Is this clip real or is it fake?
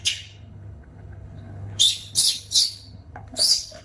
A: fake